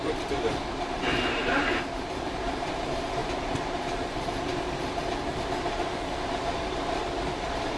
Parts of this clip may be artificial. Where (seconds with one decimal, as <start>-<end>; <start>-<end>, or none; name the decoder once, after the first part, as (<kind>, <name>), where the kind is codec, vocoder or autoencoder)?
0.0-4.5 (vocoder, BigVGAN v2); 5.3-7.8